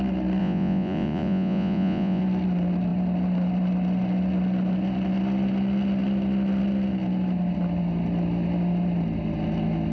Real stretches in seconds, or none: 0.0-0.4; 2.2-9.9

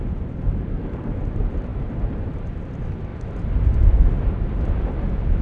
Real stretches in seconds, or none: 0.0-0.7; 1.2-5.4

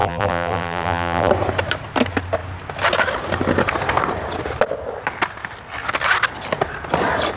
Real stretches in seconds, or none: 1.3-7.4

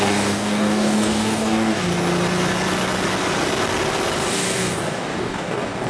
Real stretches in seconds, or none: 1.9-4.3

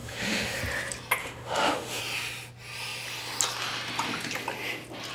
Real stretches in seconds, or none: 0.6-1.2; 2.0-5.1

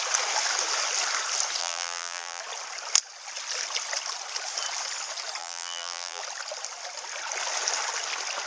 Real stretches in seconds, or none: 0.0-1.6; 2.4-5.4; 6.2-8.5

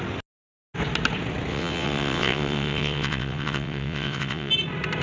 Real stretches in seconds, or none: 0.0-1.5; 4.5-5.0

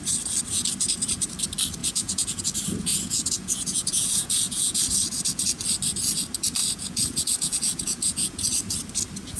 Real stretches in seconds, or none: 0.0-1.8; 2.4-2.9; 4.8-6.6; 8.5-9.4